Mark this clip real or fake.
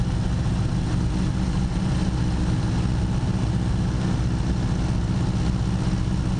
real